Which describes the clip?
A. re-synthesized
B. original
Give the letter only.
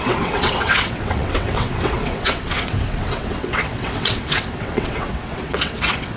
A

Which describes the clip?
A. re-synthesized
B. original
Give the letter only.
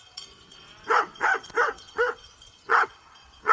A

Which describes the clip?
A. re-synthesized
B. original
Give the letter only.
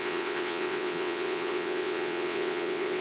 A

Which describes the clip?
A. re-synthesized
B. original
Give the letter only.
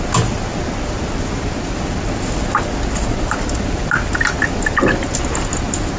B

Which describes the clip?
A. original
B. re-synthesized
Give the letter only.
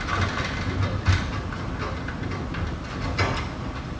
A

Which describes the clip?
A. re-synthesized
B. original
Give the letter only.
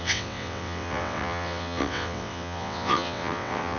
A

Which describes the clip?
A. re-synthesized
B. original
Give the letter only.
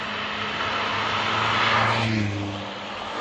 B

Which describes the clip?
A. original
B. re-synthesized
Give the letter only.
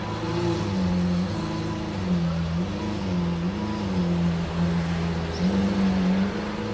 A